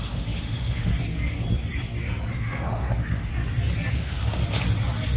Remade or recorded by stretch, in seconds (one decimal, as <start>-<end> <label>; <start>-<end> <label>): 0.0-0.9 remade; 0.9-2.3 recorded; 2.3-3.3 remade; 3.3-3.9 recorded; 3.9-4.4 remade; 4.4-5.2 recorded